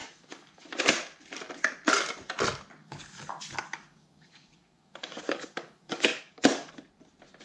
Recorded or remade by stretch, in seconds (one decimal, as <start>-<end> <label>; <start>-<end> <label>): 0.0-0.8 remade; 0.8-2.8 recorded; 2.8-6.7 remade; 6.7-7.4 recorded